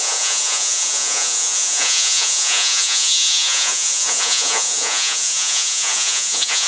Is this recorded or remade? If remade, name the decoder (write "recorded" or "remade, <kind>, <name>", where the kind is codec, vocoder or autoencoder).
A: remade, vocoder, Vocos